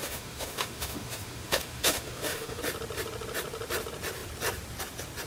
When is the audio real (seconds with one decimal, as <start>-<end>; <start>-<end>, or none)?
2.6-5.3